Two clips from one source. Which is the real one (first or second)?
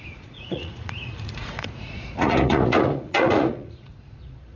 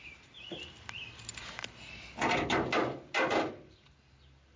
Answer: second